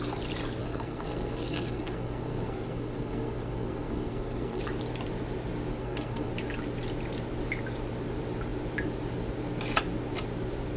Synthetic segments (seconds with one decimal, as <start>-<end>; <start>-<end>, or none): 0.6-4.6; 5.7-6.3